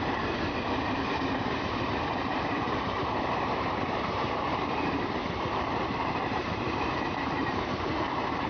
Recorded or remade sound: remade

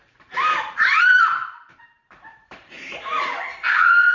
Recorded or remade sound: remade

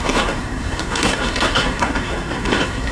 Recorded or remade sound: remade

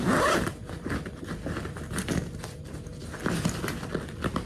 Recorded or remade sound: recorded